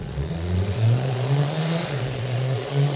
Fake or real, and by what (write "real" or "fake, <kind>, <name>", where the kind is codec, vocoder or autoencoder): fake, vocoder, Vocos